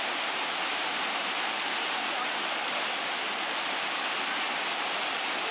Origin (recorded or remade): recorded